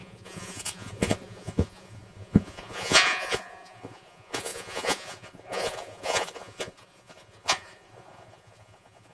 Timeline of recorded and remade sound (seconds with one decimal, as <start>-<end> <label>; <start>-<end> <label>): 0.0-9.1 remade